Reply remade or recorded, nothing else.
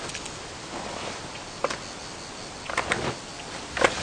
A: recorded